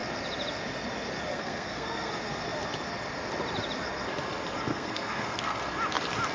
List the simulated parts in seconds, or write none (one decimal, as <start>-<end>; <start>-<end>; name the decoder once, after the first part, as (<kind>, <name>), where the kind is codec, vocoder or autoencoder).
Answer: 1.3-2.1 (codec, SNAC); 4.7-5.6